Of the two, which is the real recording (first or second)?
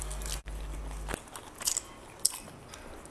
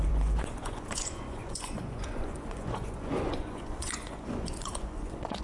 first